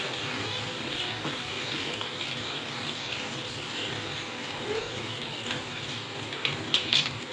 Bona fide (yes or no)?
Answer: no